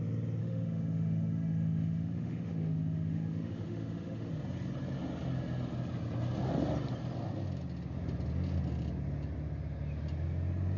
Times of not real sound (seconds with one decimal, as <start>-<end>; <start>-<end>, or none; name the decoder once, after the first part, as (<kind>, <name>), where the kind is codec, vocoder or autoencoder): 0.4-4.3 (autoencoder, DAC-VAE)